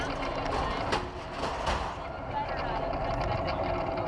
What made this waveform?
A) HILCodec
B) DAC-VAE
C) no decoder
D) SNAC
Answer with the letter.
C